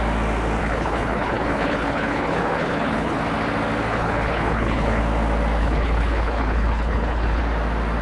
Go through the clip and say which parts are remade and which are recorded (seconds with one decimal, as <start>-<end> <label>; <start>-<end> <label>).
0.0-0.6 recorded; 0.6-3.2 remade; 3.2-3.9 recorded; 3.9-5.0 remade; 5.0-5.6 recorded; 5.6-7.4 remade; 7.4-8.0 recorded